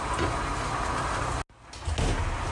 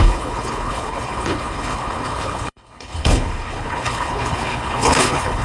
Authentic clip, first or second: first